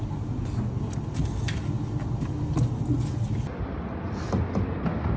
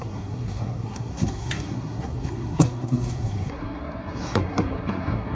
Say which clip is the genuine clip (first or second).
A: first